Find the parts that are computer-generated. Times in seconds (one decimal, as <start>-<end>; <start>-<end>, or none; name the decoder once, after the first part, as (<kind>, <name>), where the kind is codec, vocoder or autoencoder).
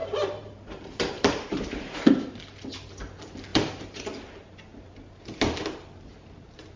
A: 0.0-2.4 (vocoder, BigVGAN v2); 3.5-4.0